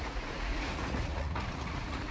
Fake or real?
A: fake